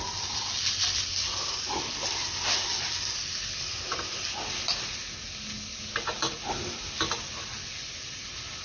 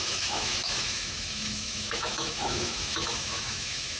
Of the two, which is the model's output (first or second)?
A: second